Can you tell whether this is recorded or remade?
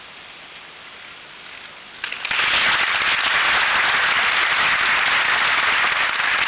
recorded